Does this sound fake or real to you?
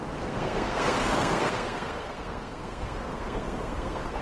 fake